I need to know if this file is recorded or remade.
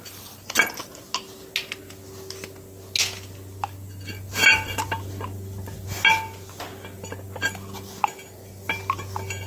recorded